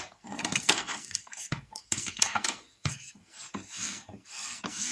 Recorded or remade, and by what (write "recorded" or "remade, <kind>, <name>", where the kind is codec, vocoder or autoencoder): remade, codec, SNAC